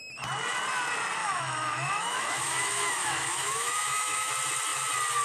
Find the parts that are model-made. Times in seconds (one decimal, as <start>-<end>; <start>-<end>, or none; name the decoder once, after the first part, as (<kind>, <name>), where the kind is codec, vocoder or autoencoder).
1.2-4.3 (autoencoder, DAC-VAE)